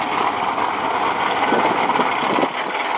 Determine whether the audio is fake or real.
real